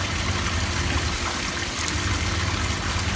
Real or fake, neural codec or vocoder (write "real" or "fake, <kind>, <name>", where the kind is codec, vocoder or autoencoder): real